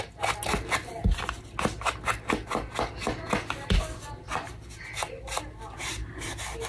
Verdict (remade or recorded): recorded